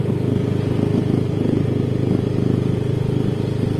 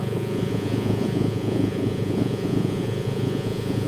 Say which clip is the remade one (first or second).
second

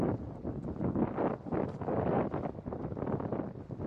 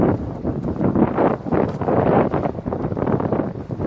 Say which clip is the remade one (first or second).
second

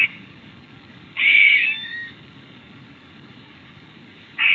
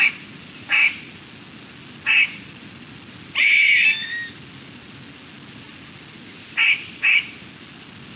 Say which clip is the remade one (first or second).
first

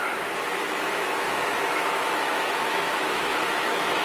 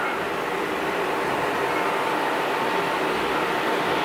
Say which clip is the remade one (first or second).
first